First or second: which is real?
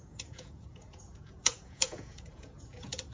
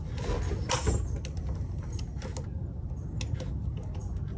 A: second